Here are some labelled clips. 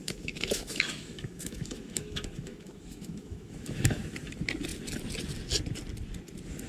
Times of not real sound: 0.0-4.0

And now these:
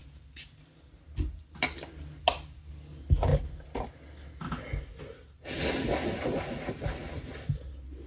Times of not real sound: none

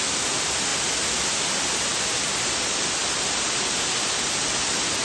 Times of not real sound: none

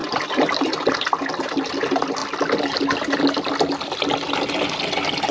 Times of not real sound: none

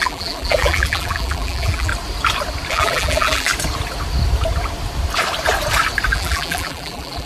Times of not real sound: 0.0-1.9; 2.7-3.5; 6.1-7.3

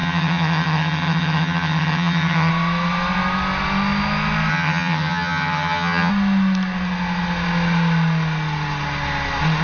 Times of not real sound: 0.0-2.5; 4.5-6.1

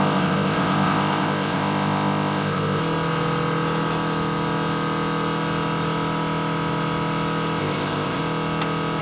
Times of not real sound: 0.0-2.8; 7.6-8.2